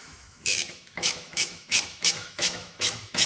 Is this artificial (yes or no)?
yes